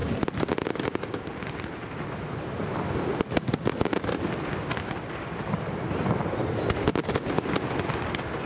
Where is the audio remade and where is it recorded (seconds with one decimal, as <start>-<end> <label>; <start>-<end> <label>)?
0.0-8.5 recorded